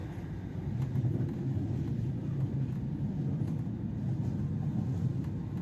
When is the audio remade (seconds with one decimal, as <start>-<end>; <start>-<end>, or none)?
none